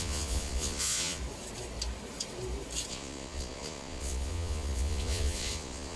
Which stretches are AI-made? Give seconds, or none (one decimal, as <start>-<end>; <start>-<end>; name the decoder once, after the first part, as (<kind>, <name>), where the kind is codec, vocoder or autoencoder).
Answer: 0.0-1.2 (vocoder, Vocos); 2.9-6.0